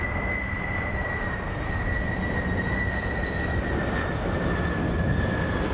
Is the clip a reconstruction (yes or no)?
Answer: no